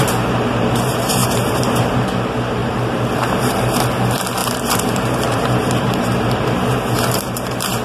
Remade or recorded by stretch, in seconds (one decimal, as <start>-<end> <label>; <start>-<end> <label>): 0.0-7.8 remade